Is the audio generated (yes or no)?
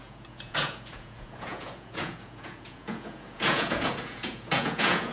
yes